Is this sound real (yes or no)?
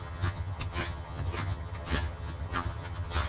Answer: no